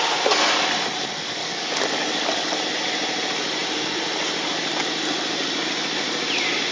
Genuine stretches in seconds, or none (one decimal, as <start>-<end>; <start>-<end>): 0.0-1.4; 2.6-6.7